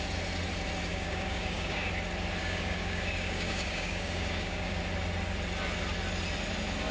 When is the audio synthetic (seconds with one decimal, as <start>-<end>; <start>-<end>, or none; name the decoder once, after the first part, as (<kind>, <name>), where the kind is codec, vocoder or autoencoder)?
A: 0.9-1.9 (codec, DAC); 2.4-4.8